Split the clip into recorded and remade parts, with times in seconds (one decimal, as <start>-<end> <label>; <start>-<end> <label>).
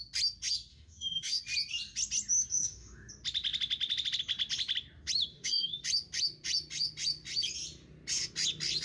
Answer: 0.0-0.7 recorded; 0.7-1.4 remade; 1.4-2.5 recorded; 2.5-3.1 remade; 3.1-5.3 recorded; 5.3-5.8 remade; 5.8-8.8 recorded